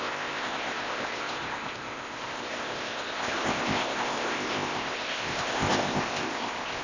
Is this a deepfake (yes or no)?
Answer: yes